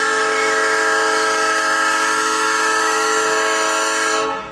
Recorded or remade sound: remade